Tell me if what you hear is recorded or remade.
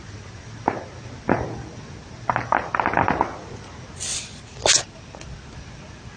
recorded